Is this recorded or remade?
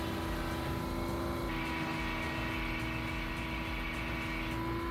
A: recorded